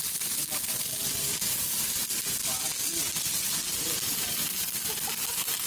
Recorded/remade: recorded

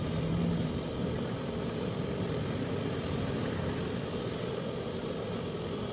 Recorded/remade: recorded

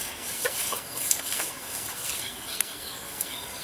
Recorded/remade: remade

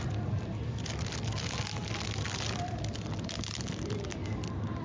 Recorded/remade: recorded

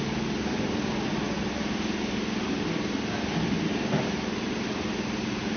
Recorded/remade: recorded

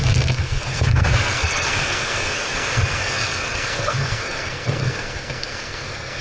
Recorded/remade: remade